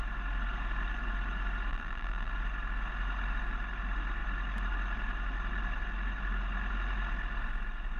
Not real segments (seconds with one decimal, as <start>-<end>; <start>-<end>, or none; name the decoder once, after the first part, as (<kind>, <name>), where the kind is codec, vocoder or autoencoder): 1.7-2.3 (vocoder, BigVGAN v2)